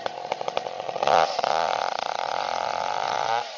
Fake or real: fake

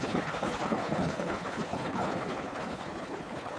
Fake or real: fake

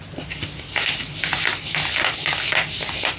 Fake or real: real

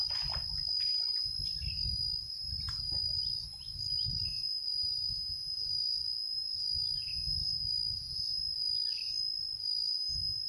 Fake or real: real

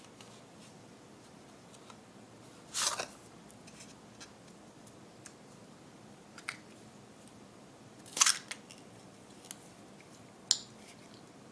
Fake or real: real